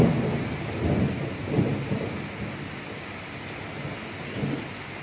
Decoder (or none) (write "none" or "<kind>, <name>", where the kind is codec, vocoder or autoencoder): none